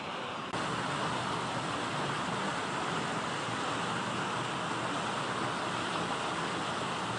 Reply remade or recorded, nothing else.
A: recorded